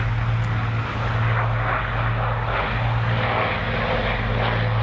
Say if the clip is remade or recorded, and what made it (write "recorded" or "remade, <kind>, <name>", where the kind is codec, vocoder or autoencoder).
recorded